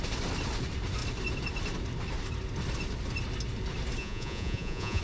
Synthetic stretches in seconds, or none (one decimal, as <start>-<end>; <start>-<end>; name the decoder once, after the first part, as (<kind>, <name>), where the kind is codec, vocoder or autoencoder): 4.0-5.0 (vocoder, Vocos)